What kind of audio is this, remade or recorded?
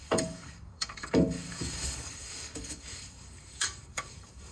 remade